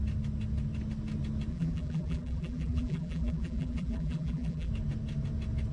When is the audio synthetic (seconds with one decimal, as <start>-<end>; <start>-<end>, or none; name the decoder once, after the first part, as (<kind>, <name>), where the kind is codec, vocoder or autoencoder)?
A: 1.5-4.7 (vocoder, BigVGAN v2)